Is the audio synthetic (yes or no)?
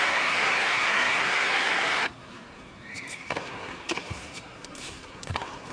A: yes